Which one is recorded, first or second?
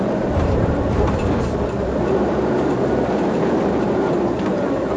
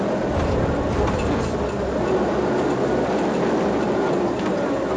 second